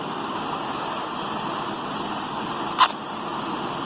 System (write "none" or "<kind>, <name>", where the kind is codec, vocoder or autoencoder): none